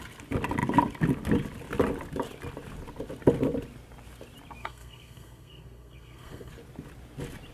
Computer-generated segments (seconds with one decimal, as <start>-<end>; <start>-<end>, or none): 4.6-6.5